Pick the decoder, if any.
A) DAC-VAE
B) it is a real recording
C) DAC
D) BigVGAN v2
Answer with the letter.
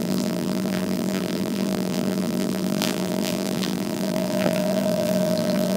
D